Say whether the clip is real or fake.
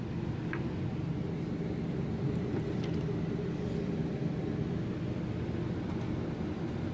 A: real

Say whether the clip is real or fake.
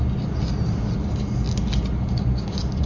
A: real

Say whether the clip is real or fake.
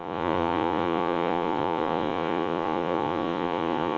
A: fake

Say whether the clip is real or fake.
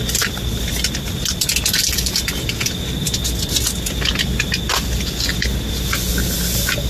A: real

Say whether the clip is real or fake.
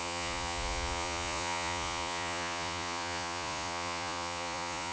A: fake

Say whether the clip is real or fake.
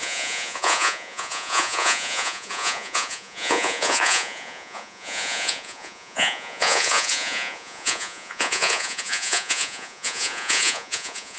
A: fake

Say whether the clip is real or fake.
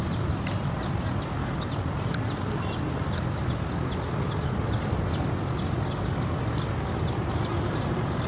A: real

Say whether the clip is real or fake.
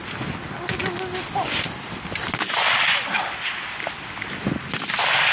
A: real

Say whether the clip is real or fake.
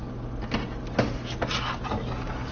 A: real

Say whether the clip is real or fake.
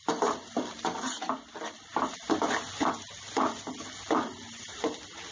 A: real